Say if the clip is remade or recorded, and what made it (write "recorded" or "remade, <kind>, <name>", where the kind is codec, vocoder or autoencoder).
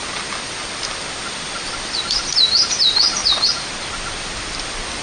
recorded